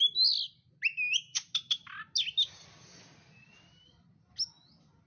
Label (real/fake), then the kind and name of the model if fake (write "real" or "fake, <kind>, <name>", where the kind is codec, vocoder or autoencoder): real